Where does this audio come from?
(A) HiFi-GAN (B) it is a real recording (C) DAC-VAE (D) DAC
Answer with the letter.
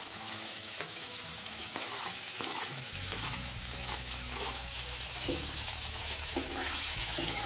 C